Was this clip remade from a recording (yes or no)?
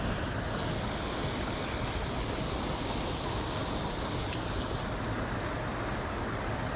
no